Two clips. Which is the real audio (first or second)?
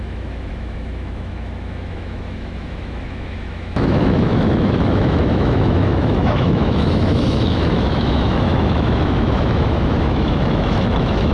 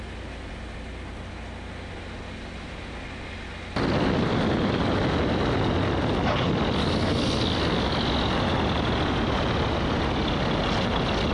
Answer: second